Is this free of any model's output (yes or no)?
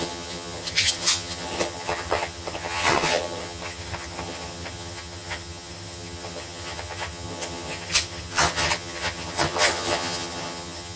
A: no